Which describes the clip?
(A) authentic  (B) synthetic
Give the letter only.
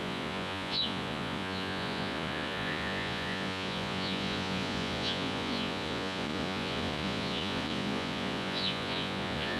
B